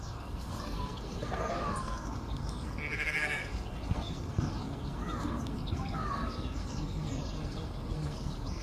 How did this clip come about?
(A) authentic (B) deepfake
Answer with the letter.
B